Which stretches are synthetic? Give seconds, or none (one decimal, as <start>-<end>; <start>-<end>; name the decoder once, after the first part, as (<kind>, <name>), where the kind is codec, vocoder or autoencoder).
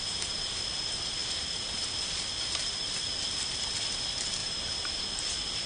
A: 4.4-5.3 (vocoder, BigVGAN v2)